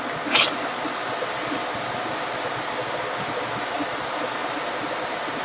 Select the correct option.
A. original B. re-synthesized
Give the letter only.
A